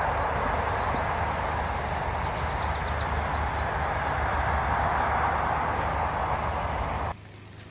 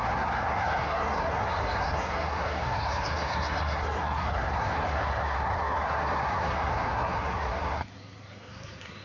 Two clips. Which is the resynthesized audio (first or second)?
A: second